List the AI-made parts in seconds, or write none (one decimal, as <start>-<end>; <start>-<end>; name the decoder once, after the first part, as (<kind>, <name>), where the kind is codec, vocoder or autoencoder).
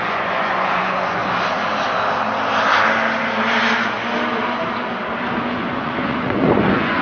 0.0-1.2 (vocoder, Vocos); 5.4-7.0